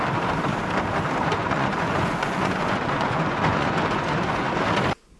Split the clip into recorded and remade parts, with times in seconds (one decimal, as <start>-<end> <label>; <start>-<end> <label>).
0.0-1.4 recorded; 1.4-4.5 remade; 4.5-5.2 recorded